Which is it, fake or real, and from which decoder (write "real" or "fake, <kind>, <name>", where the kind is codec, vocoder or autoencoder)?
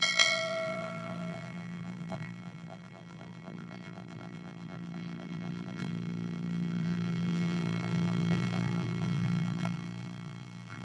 fake, vocoder, BigVGAN v2